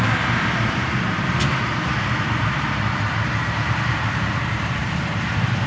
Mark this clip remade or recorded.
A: remade